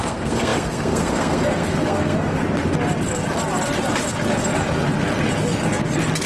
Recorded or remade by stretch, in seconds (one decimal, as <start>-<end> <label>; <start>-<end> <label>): 0.0-2.4 remade; 2.4-6.3 recorded